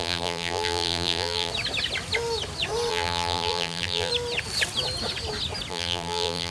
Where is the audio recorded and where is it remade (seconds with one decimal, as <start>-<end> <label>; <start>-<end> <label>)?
0.0-1.5 remade; 1.5-2.9 recorded; 2.9-4.1 remade; 4.1-5.7 recorded; 5.7-6.5 remade